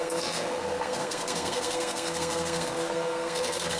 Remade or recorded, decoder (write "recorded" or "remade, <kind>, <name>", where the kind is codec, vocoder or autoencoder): remade, codec, SNAC